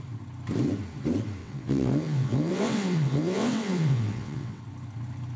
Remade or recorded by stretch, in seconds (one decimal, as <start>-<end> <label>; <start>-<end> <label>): 0.0-1.4 recorded; 1.4-4.6 remade; 4.6-5.4 recorded